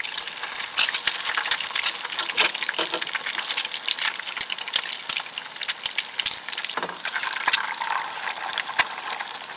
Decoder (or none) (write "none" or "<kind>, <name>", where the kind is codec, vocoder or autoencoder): none